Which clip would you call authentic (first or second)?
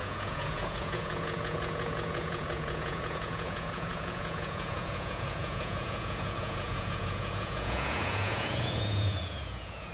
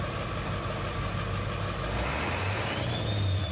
second